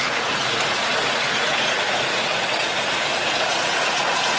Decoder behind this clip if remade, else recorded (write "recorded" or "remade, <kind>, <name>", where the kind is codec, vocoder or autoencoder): remade, vocoder, Vocos